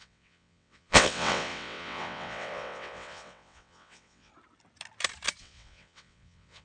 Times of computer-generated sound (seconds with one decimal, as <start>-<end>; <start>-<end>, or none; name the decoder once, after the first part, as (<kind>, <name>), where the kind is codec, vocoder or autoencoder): 0.0-4.3 (vocoder, WaveNeXt); 5.4-6.6